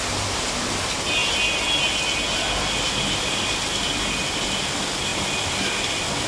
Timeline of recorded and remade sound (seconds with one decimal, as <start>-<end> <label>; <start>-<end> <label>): 0.0-6.3 recorded